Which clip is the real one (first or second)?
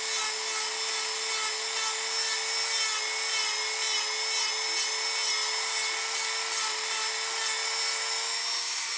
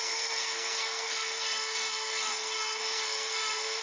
first